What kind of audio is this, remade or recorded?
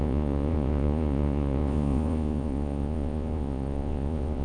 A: remade